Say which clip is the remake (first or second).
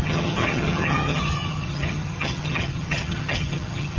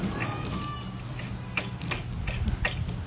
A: first